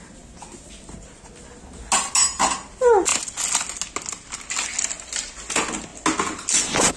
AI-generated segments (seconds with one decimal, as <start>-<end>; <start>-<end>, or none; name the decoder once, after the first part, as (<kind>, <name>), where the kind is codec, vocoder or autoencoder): none